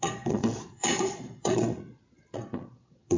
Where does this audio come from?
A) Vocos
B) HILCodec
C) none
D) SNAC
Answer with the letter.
A